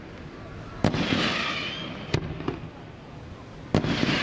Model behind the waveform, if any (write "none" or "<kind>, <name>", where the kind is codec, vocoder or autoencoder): none